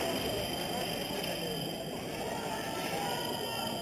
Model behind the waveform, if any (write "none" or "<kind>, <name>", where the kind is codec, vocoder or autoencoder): none